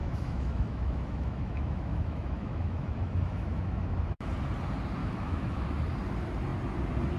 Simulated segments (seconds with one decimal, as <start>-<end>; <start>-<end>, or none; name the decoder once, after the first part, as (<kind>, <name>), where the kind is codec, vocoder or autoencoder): 0.0-4.3 (autoencoder, DAC-VAE); 5.0-5.7